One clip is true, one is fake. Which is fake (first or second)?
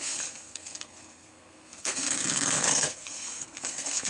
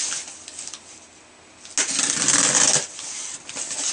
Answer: first